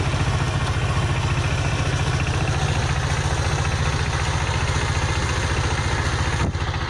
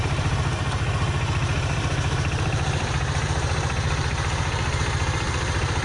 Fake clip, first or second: second